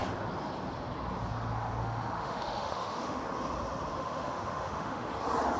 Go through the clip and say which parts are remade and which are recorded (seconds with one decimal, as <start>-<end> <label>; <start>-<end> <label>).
0.0-1.8 recorded; 1.8-3.2 remade; 3.2-3.9 recorded; 3.9-5.1 remade; 5.1-5.6 recorded